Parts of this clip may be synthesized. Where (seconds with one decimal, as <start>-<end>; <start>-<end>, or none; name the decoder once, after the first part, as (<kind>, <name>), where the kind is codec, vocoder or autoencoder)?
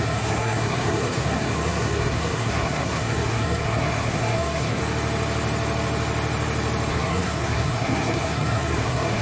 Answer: 0.0-4.8 (codec, SNAC); 6.9-9.2